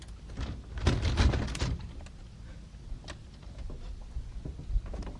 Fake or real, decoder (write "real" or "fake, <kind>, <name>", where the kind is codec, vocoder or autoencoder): real